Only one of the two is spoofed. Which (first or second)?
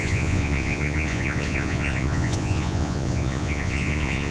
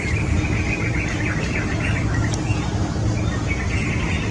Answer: first